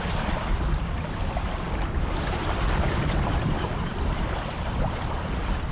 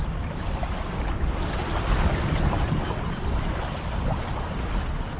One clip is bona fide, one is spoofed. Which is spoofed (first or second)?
first